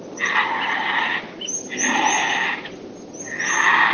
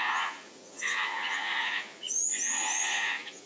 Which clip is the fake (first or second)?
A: second